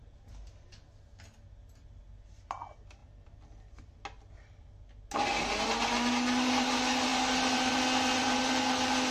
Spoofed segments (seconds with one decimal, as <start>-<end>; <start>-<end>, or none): none